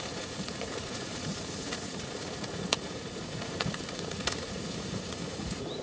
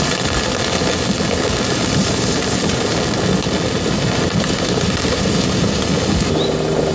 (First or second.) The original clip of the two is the second